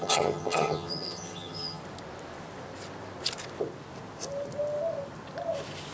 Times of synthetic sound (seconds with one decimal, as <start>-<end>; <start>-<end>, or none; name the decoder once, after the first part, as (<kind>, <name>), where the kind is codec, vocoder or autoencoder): 0.0-1.8 (vocoder, HiFi-GAN)